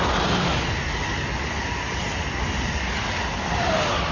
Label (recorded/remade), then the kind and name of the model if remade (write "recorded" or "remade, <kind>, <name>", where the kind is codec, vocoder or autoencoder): recorded